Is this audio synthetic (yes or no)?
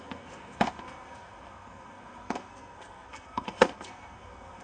yes